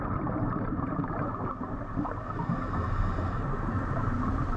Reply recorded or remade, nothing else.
recorded